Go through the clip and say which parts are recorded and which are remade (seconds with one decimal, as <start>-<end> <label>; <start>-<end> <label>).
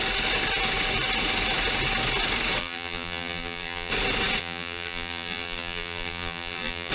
0.0-2.6 recorded; 2.6-3.9 remade; 3.9-4.4 recorded; 4.4-6.9 remade